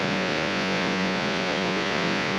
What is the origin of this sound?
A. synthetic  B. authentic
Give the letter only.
A